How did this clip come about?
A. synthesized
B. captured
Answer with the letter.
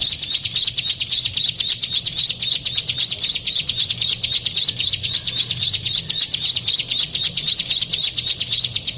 A